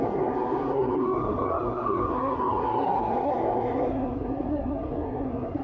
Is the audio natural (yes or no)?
no